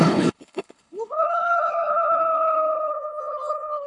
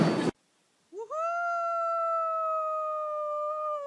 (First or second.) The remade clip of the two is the first